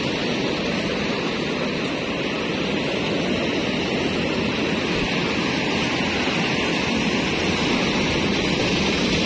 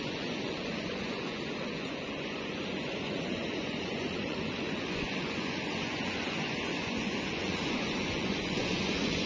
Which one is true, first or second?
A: first